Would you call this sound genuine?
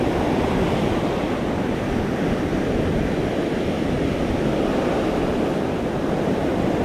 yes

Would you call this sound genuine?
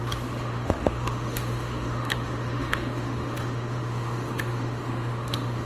no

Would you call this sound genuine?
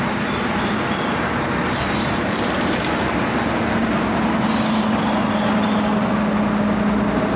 yes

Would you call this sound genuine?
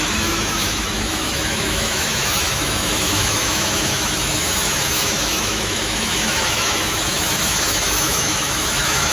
no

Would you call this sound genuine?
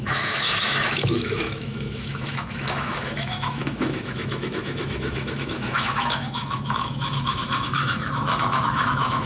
no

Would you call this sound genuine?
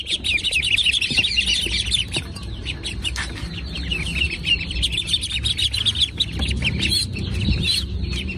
yes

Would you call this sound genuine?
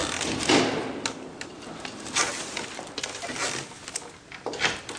yes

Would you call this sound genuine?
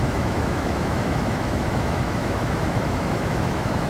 no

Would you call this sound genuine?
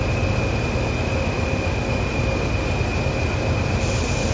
yes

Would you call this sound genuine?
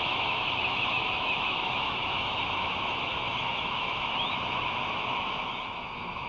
no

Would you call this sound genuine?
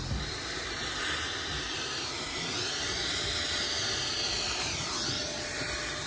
yes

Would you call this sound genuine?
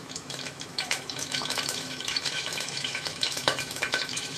no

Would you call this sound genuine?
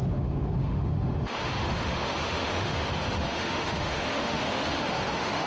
no